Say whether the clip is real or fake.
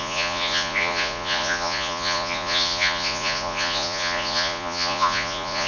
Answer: fake